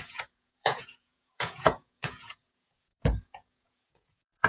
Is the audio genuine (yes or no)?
no